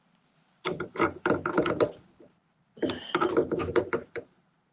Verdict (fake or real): fake